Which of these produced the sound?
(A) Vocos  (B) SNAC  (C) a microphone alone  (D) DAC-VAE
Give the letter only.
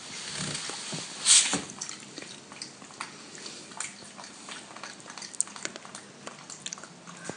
C